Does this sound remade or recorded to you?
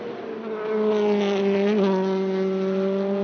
recorded